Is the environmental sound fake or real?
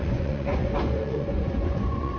fake